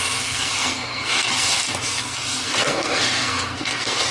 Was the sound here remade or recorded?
remade